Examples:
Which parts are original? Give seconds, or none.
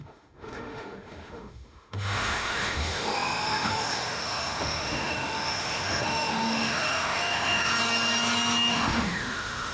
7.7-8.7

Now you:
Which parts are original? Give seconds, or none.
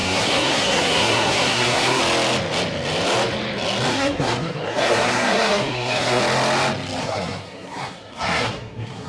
2.0-3.9; 6.2-7.0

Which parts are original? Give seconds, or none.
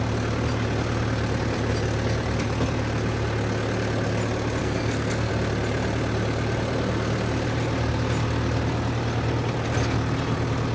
0.0-4.6; 5.3-10.7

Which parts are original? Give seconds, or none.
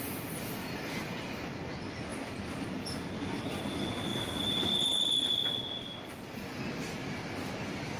0.0-4.1; 5.6-8.0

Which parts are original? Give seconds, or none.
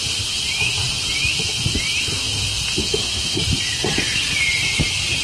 0.0-2.8; 3.4-5.2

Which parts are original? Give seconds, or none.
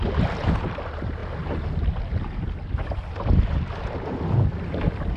0.0-5.2